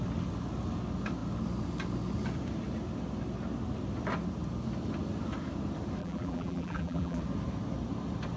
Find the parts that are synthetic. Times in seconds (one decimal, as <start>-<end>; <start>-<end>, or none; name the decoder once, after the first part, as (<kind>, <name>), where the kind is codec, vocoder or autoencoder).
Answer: 6.0-7.2 (vocoder, BigVGAN v2)